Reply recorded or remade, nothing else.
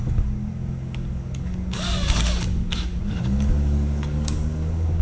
remade